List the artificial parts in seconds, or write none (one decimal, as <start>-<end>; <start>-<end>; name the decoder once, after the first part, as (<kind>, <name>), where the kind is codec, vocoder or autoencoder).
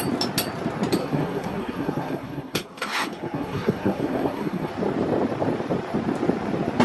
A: 1.0-4.7 (codec, SNAC)